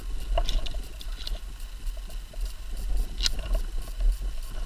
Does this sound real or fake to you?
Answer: real